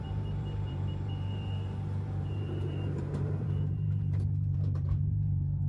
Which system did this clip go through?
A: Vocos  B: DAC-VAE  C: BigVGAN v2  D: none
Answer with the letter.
C